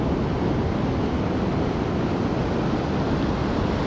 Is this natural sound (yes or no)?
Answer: yes